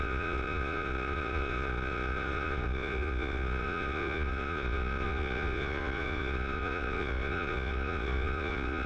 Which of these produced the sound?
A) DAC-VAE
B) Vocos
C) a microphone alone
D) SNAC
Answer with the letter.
B